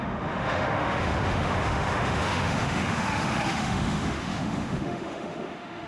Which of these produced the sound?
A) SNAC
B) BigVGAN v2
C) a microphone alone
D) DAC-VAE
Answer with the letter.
D